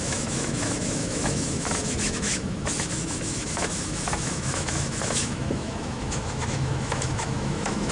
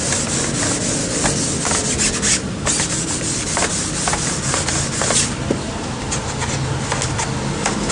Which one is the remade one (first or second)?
first